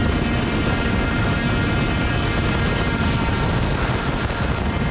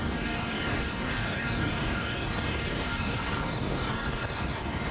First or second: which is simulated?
second